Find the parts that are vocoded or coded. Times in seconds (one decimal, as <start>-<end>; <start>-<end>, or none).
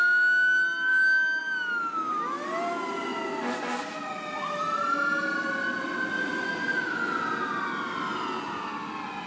none